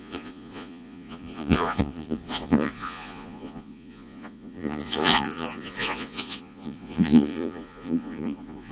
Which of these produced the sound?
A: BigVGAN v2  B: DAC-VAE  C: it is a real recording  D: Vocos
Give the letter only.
D